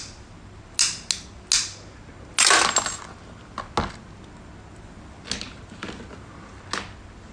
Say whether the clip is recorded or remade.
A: recorded